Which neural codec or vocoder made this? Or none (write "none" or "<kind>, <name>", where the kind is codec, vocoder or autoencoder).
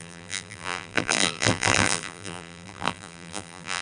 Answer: vocoder, BigVGAN v2